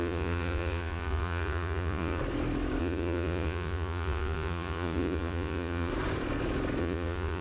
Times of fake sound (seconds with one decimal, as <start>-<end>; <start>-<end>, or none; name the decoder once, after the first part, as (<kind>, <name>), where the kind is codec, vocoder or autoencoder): 0.0-2.2 (vocoder, Vocos); 2.8-5.9; 6.8-7.4